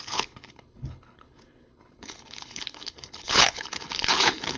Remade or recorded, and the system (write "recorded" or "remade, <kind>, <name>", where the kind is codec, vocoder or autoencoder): remade, codec, HILCodec